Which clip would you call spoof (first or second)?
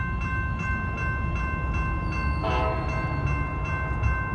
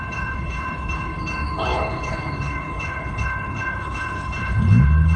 second